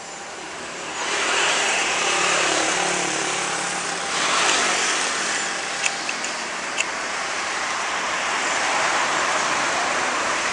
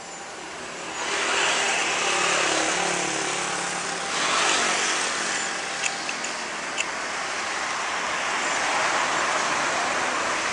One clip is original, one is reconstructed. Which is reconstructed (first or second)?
first